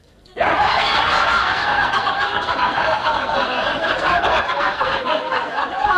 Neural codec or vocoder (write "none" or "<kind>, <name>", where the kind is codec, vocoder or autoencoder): codec, SNAC